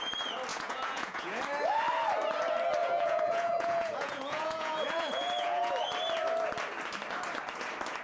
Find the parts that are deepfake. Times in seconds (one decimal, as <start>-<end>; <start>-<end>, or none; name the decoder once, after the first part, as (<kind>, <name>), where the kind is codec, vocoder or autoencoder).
0.5-1.4 (vocoder, Vocos); 2.8-5.7